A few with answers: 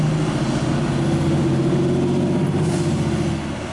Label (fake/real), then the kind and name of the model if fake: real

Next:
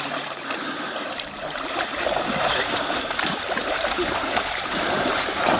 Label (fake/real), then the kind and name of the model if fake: fake, vocoder, BigVGAN v2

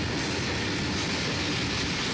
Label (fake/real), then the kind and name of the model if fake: real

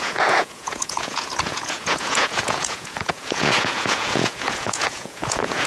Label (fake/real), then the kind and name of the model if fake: fake, vocoder, Vocos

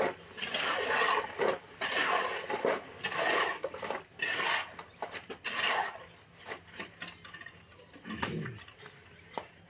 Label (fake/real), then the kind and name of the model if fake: real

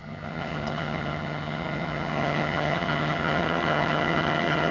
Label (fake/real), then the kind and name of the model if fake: fake, vocoder, HiFi-GAN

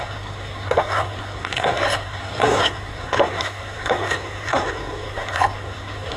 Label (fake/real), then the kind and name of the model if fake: fake, codec, SNAC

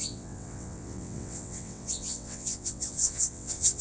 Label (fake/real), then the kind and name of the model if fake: fake, vocoder, WaveNeXt